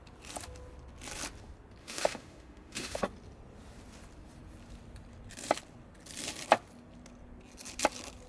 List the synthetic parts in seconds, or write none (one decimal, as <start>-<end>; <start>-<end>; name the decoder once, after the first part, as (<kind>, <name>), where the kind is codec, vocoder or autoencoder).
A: 1.8-3.0 (autoencoder, DAC-VAE)